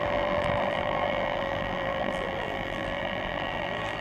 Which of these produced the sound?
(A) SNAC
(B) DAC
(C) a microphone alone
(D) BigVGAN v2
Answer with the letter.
D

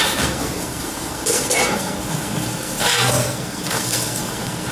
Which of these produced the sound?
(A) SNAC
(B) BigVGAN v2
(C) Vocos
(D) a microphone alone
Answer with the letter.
A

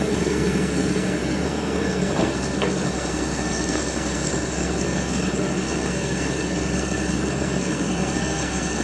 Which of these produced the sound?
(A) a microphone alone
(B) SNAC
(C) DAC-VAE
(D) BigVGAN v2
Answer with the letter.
B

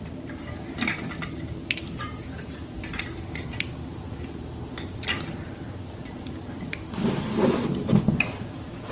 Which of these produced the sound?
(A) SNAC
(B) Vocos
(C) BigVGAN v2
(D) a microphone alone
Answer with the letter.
D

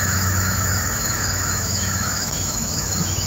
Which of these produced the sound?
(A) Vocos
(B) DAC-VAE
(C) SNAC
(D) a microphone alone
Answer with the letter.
B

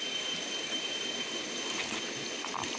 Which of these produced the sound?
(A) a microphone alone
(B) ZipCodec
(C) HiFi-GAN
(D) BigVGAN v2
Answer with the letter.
A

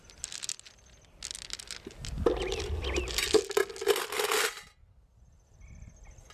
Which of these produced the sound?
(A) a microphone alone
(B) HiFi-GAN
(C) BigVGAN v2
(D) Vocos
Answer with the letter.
A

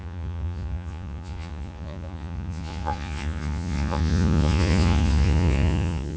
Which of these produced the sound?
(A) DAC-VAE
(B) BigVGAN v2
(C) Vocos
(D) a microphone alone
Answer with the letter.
C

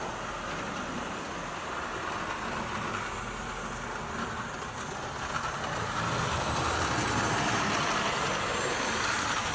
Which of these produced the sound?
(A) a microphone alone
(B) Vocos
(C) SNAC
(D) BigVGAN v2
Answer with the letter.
A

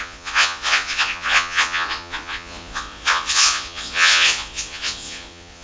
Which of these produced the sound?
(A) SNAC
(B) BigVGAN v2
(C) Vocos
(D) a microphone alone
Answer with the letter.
C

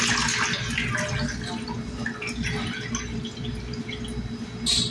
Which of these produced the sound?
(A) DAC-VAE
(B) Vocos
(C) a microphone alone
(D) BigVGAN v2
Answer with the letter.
C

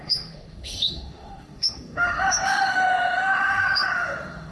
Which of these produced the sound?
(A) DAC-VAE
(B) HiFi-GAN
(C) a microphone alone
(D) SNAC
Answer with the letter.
A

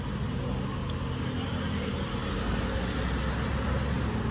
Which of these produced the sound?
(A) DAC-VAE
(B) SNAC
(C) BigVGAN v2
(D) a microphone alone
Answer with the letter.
D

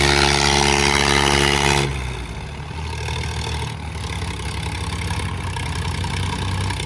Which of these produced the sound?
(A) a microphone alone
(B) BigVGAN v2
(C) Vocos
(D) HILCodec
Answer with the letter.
A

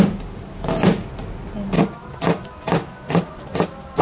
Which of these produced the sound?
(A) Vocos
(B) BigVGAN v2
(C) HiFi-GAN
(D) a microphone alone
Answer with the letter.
D